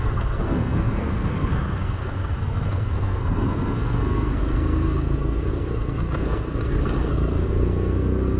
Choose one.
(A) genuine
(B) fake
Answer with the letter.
B